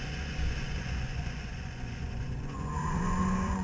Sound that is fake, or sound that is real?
fake